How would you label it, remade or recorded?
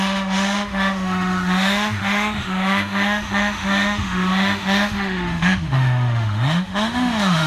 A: remade